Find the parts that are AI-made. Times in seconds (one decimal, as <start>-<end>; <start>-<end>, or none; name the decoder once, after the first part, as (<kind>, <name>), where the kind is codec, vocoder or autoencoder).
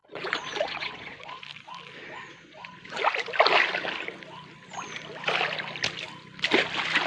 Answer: 0.0-1.4 (vocoder, Vocos); 2.0-3.0